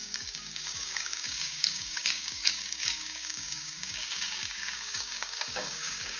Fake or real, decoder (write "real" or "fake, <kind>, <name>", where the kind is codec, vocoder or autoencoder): fake, codec, DAC